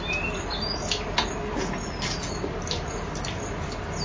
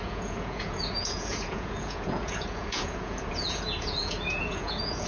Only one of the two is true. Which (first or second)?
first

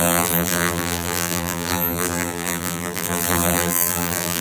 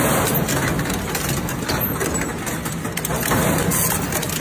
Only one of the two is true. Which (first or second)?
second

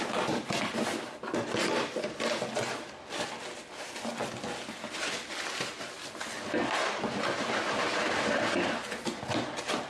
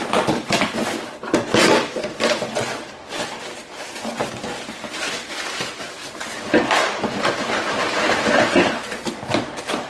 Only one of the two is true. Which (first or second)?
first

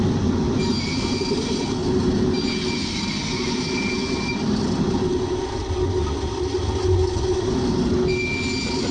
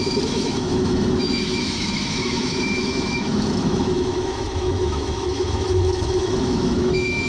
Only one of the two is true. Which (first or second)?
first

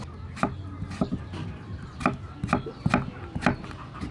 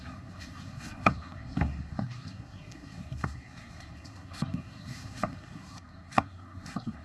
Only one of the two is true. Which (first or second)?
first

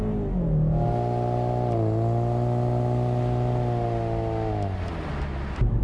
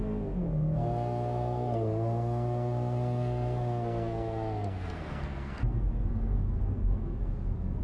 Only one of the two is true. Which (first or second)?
first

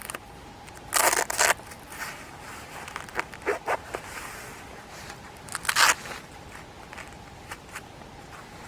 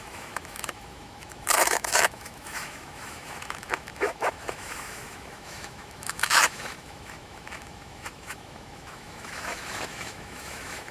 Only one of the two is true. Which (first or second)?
first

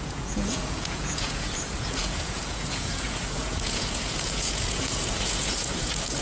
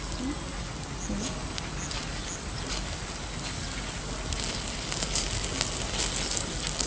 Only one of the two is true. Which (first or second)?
second